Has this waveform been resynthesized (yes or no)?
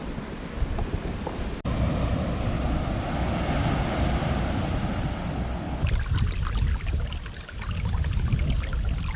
no